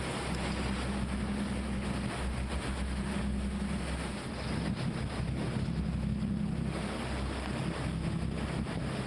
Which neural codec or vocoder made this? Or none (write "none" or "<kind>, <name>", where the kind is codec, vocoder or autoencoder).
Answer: none